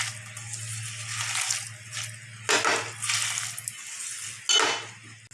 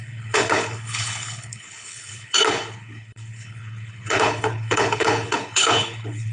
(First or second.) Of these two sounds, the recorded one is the first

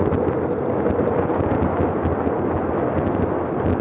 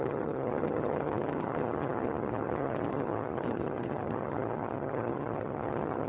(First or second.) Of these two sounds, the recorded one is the first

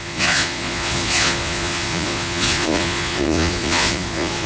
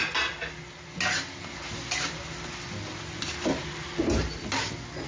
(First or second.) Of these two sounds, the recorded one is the second